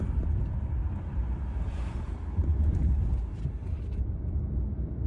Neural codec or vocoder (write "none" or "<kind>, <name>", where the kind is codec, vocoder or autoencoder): none